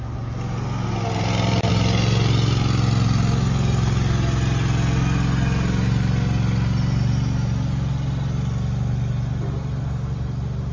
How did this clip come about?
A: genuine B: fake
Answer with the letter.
A